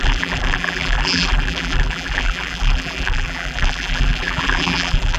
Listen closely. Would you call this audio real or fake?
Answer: fake